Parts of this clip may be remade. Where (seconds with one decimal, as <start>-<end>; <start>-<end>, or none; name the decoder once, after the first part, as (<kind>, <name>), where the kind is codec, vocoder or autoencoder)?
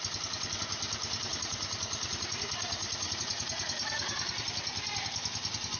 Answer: 1.3-4.3 (vocoder, Vocos)